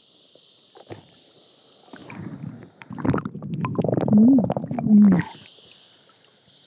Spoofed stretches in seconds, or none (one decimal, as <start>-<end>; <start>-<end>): none